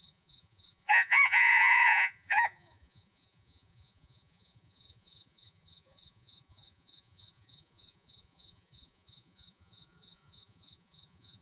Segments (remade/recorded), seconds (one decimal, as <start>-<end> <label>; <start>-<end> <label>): 0.0-11.4 remade